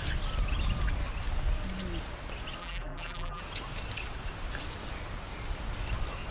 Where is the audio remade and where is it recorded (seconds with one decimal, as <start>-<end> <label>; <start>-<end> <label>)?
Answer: 0.0-2.6 recorded; 2.6-3.4 remade; 3.4-6.3 recorded